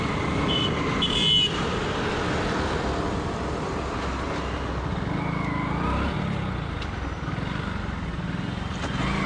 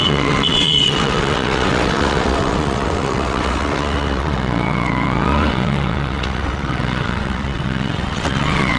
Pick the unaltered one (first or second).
first